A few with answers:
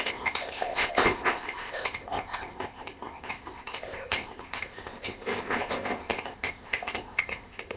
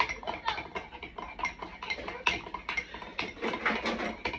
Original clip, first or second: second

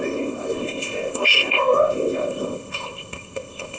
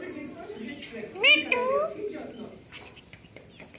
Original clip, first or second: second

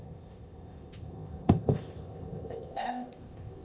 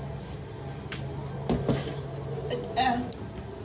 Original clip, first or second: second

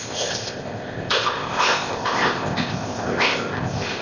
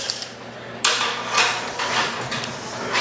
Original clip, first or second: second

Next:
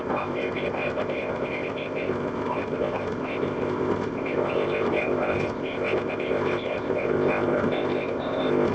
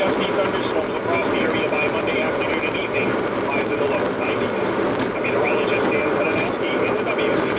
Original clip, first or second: second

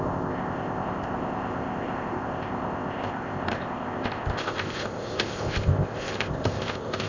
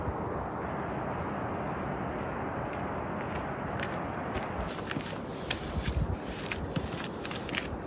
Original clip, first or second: second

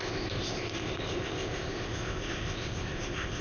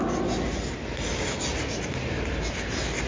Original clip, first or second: second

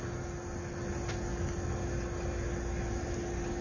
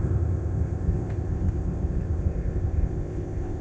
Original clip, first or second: first